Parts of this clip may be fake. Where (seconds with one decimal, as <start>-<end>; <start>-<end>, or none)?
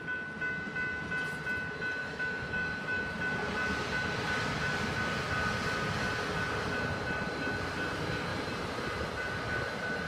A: 2.0-3.0